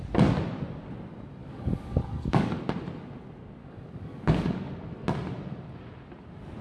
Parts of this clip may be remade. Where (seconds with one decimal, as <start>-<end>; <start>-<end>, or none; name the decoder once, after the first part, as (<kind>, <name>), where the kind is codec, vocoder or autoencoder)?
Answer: 1.4-2.6 (codec, DAC); 3.6-4.7